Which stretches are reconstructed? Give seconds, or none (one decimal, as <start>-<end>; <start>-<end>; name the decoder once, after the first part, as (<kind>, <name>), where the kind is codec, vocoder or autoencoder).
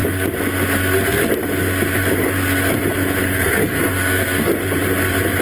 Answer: 3.2-4.5 (codec, SNAC)